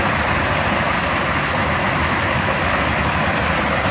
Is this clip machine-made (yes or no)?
no